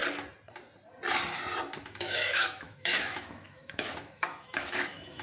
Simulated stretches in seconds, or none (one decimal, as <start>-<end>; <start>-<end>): 1.8-5.2